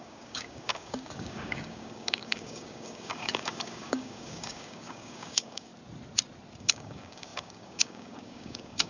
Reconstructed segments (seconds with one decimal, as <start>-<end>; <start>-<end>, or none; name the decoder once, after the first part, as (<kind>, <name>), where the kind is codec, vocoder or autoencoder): 0.0-5.7 (codec, DAC); 6.6-8.9